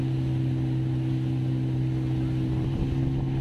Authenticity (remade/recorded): recorded